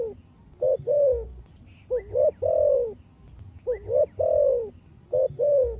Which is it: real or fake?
real